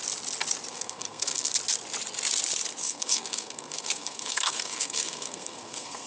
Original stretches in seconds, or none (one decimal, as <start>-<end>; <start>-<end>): 0.0-0.7; 1.5-2.8